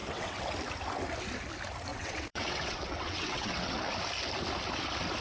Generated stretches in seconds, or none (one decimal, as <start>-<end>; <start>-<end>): 0.0-0.5; 1.9-3.9